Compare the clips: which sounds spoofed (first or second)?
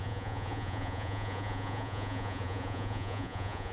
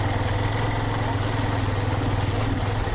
first